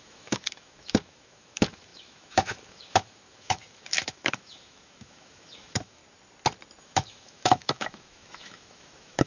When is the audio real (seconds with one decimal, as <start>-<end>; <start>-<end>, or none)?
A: 6.0-6.8